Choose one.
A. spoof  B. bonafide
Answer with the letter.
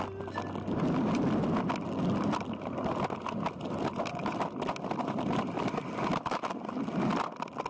B